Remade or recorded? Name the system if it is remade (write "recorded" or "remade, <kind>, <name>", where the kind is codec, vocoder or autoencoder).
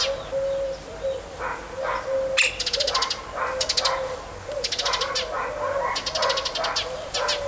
recorded